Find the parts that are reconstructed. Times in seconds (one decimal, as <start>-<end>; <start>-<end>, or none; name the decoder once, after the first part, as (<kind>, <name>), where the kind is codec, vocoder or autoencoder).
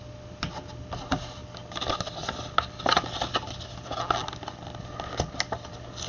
none